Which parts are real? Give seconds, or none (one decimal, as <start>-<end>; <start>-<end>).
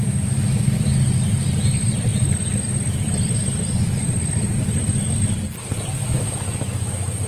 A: 0.9-6.0